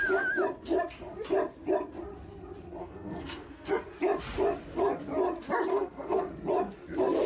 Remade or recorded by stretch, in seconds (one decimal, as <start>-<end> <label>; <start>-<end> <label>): 0.0-2.8 recorded; 2.8-3.7 remade; 3.7-5.7 recorded; 5.7-6.2 remade; 6.2-7.3 recorded